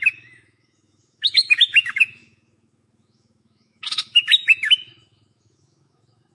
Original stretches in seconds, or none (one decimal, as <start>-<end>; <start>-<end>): none